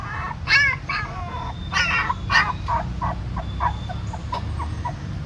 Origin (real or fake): real